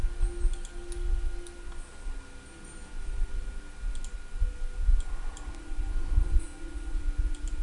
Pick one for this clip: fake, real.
real